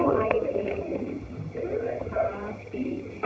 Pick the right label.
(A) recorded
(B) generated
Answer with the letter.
B